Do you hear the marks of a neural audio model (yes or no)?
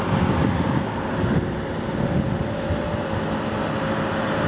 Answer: no